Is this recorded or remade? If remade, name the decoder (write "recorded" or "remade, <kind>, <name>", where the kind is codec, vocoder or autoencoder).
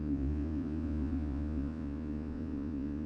remade, vocoder, Vocos